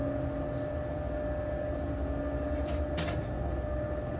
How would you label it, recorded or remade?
recorded